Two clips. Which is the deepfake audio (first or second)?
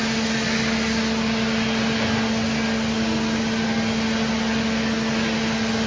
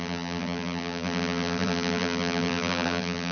second